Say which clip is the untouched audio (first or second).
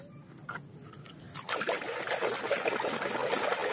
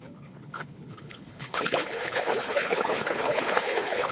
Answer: first